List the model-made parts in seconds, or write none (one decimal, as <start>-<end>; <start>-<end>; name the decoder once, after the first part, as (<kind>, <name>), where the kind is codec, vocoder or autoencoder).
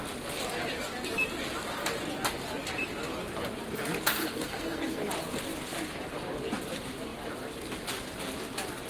4.2-5.1 (codec, SNAC)